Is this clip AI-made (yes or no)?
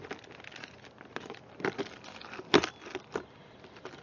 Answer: no